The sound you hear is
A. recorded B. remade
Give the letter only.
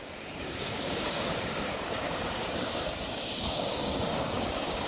B